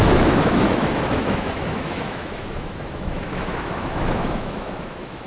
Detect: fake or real fake